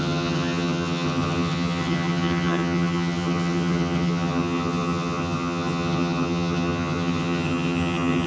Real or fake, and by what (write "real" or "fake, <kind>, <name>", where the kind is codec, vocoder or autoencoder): fake, vocoder, HiFi-GAN